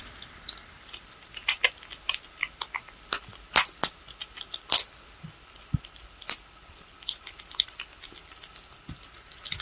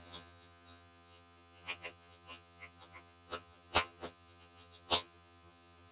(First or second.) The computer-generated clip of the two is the second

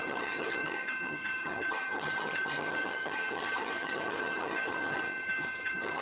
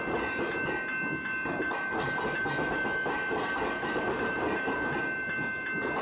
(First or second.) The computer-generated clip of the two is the first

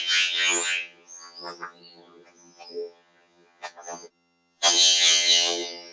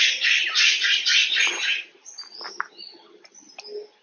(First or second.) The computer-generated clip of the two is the first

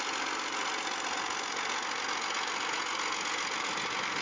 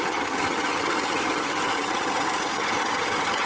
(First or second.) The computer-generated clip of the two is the second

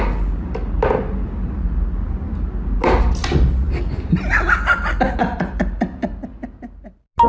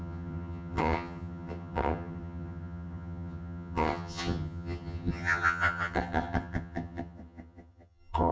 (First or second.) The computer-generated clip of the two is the second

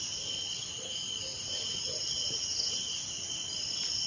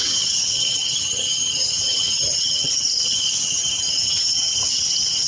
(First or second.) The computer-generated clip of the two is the second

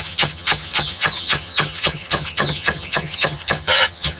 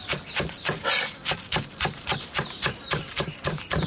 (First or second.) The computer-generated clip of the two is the first